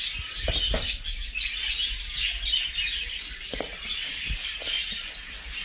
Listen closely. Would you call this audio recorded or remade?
recorded